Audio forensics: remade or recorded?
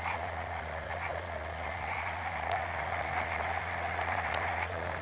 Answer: remade